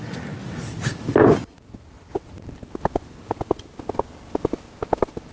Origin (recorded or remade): recorded